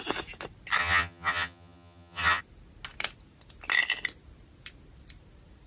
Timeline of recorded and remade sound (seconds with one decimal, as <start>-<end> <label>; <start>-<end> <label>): 0.0-0.8 recorded; 0.8-2.4 remade; 2.4-5.7 recorded